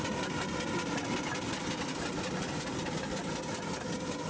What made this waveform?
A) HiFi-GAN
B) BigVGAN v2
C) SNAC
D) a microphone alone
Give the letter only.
D